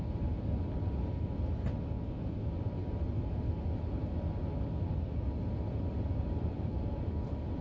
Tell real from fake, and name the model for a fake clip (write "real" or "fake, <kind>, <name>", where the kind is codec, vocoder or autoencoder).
real